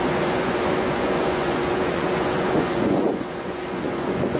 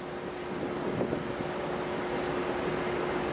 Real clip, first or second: second